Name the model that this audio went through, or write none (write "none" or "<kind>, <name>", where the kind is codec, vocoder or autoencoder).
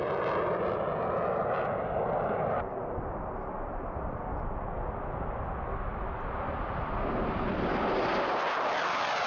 none